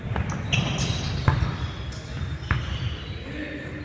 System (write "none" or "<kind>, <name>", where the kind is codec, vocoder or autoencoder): none